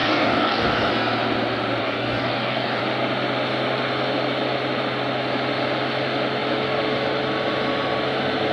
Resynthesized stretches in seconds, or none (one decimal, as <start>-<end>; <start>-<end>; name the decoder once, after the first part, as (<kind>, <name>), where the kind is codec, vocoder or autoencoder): 0.0-0.9 (codec, DAC); 1.8-2.8